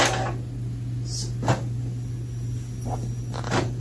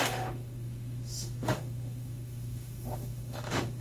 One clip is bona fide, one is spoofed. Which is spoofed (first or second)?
second